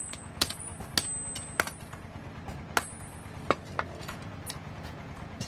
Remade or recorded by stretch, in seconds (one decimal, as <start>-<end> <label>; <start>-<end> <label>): 0.0-0.7 remade; 0.7-4.0 recorded; 4.0-5.5 remade